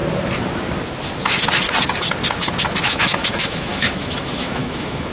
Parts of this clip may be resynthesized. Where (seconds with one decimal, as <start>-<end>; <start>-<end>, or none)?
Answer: 2.8-5.1